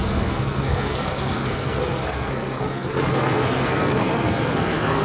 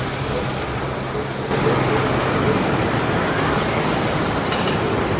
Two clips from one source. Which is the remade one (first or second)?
first